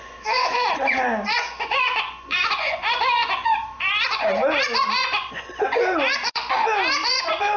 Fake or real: fake